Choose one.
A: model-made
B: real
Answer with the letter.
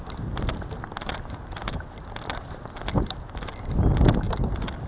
B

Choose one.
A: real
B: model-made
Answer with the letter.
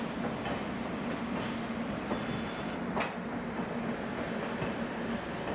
A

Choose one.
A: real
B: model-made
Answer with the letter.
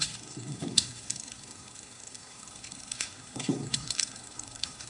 B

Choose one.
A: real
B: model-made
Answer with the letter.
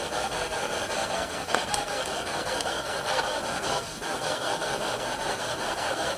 B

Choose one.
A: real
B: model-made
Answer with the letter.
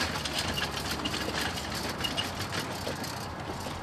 A